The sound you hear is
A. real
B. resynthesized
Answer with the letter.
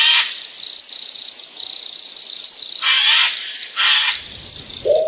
A